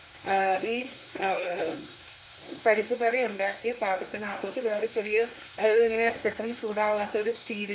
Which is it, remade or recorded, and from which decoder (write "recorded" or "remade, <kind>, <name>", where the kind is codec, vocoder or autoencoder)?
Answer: remade, codec, SNAC